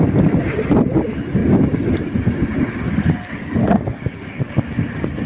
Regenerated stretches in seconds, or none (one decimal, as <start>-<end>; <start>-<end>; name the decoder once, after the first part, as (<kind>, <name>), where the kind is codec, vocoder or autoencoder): none